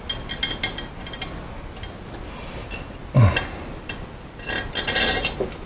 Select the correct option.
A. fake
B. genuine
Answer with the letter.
B